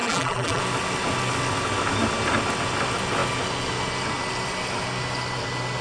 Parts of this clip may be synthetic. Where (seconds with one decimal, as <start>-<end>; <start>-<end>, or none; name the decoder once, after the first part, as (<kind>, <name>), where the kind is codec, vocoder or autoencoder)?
0.0-0.6 (vocoder, BigVGAN v2)